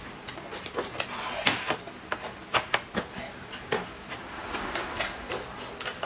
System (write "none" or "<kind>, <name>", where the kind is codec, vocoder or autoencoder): none